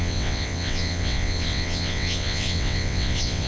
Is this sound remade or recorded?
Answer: remade